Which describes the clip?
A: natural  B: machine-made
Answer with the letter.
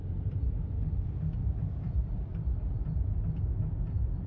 A